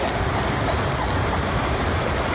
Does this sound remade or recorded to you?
recorded